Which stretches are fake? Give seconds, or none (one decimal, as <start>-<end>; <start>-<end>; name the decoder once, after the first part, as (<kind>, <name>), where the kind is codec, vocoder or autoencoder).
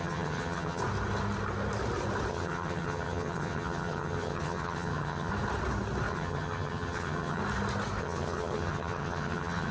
0.0-0.8 (vocoder, HiFi-GAN); 2.3-5.3; 6.1-7.4; 8.0-9.7